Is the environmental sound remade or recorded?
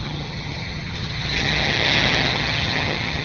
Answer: remade